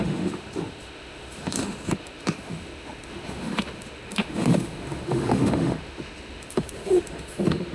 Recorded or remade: remade